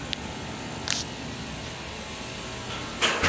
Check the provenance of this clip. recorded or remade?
recorded